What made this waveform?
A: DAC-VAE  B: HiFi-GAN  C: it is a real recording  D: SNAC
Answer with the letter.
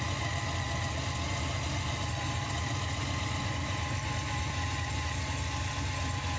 C